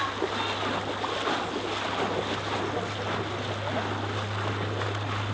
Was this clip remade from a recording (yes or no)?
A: no